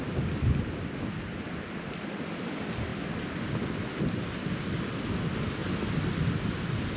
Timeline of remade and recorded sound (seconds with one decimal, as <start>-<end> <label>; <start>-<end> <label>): 0.0-7.0 recorded